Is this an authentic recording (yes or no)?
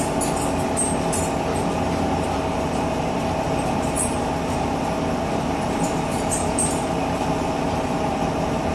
no